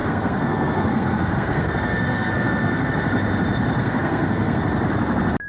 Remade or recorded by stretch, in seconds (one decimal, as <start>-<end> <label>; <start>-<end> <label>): 0.0-2.9 remade; 2.9-3.8 recorded; 3.8-4.6 remade; 4.6-5.5 recorded